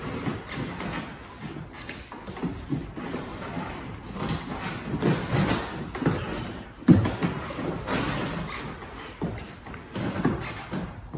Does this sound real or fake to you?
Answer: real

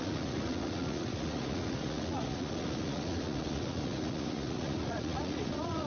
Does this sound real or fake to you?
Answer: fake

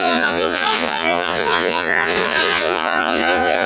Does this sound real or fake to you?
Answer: fake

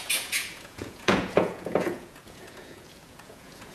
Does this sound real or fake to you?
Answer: fake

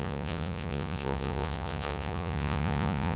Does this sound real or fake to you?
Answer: fake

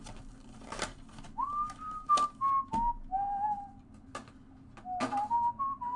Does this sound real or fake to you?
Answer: real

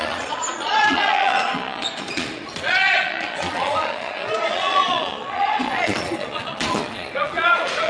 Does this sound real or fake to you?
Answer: fake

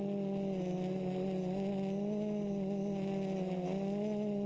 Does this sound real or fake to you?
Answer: real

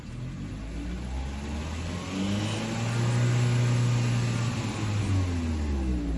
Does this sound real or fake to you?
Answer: real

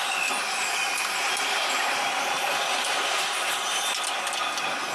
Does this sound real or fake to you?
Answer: real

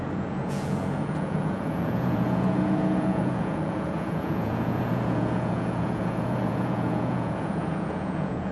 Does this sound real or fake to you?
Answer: fake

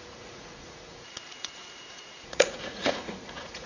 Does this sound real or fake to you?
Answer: fake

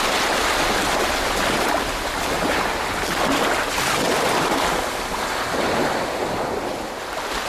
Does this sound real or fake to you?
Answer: real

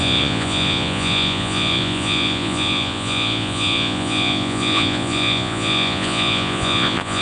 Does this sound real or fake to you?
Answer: fake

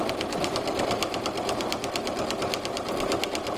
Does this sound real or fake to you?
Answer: real